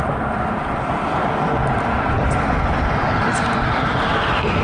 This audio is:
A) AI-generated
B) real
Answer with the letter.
B